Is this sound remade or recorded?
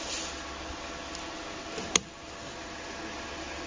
recorded